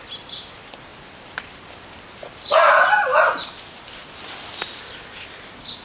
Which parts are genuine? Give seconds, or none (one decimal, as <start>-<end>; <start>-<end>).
0.0-5.8